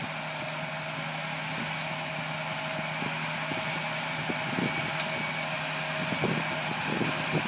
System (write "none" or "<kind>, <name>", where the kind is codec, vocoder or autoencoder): none